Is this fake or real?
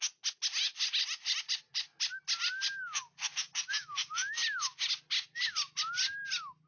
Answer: real